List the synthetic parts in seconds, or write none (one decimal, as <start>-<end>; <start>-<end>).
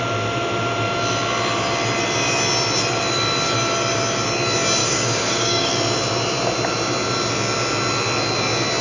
4.8-5.7